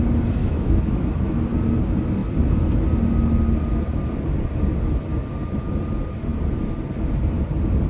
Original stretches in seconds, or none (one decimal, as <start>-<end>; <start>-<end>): 0.0-0.4; 1.4-7.9